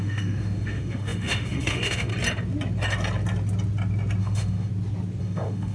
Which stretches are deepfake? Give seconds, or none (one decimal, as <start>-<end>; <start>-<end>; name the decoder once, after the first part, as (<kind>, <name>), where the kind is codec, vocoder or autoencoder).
0.0-2.1 (autoencoder, DAC-VAE); 4.2-4.7; 5.2-5.7